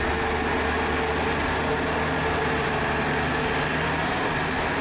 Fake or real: real